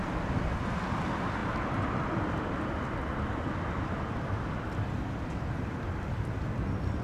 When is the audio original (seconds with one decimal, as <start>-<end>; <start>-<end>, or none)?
0.0-7.0